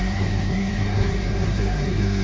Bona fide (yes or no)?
no